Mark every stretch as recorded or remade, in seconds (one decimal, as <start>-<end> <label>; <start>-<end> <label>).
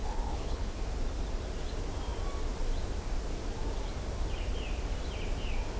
0.0-0.8 remade; 0.8-5.8 recorded